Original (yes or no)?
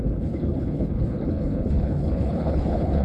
no